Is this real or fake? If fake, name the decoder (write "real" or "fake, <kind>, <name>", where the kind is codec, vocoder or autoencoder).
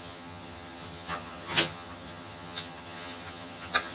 fake, vocoder, HiFi-GAN